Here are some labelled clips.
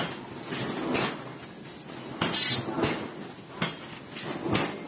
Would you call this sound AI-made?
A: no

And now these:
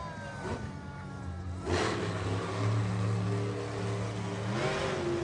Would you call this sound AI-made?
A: no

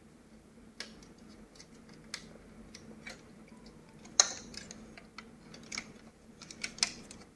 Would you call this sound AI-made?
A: no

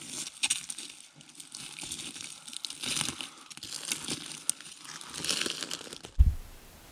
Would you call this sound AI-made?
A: no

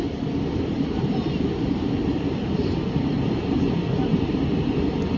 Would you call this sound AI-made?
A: no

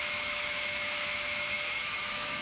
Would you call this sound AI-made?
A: yes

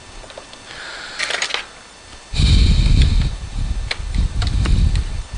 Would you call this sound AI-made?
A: no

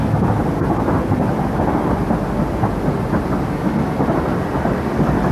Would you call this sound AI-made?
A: no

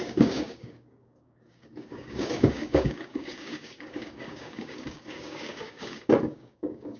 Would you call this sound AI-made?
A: yes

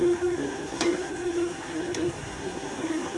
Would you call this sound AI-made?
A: yes